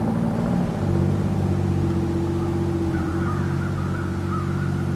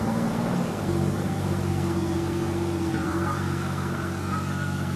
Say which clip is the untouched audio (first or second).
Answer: first